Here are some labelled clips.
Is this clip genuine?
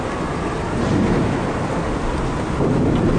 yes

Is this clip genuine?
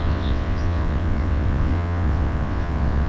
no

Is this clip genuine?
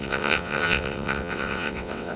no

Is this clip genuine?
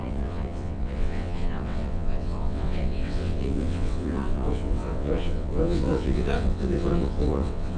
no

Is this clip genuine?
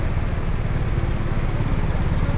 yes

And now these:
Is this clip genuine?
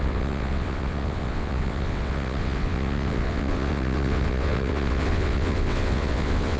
no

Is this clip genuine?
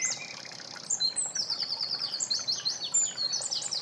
yes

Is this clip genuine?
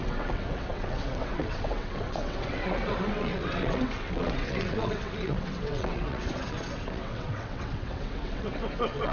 no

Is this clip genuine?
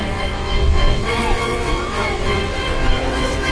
no